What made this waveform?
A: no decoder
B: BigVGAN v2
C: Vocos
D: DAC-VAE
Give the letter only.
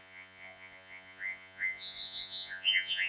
C